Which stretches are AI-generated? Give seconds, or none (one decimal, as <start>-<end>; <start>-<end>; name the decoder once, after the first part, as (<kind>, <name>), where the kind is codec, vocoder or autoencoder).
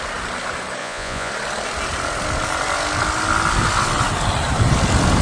0.8-1.3 (vocoder, Vocos)